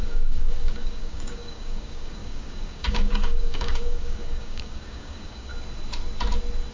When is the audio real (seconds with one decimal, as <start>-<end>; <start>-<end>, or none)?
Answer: 5.5-6.7